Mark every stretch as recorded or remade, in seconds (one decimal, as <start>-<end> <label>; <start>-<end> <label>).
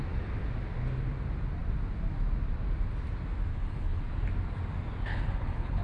0.0-3.5 recorded; 3.5-4.0 remade; 4.0-5.1 recorded; 5.1-5.8 remade